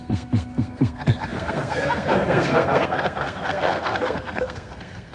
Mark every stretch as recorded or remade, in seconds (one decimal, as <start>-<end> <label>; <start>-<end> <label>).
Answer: 0.0-5.1 remade